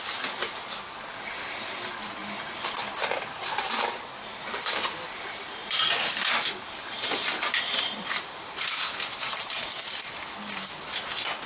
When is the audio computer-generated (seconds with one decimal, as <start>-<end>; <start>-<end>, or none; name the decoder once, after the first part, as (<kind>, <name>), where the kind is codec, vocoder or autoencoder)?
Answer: 2.2-3.7 (vocoder, BigVGAN v2); 5.6-9.5